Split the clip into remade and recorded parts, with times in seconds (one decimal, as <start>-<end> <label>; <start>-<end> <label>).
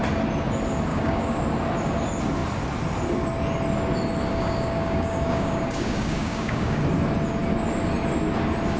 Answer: 0.0-0.9 recorded; 0.9-1.4 remade; 1.4-4.3 recorded; 4.3-6.8 remade; 6.8-8.8 recorded